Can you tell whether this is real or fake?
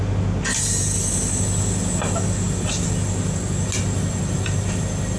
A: real